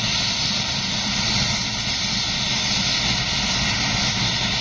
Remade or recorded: recorded